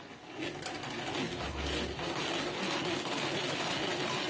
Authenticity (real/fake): real